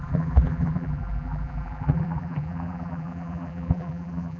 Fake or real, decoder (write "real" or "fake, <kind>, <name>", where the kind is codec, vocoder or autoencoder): fake, vocoder, BigVGAN v2